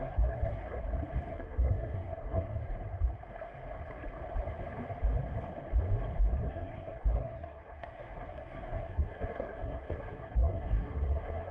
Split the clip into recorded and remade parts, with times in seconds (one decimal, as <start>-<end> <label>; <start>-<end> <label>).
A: 0.0-0.8 remade; 0.8-1.3 recorded; 1.3-2.6 remade; 2.6-6.5 recorded; 6.5-11.5 remade